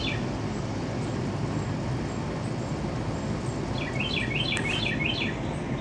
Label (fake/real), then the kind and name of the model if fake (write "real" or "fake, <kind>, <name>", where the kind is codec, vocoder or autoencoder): real